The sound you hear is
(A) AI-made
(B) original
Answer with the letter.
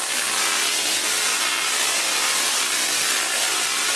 B